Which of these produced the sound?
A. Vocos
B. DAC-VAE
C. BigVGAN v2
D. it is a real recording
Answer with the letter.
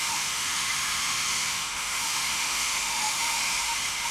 B